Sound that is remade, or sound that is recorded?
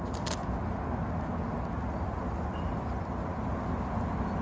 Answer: recorded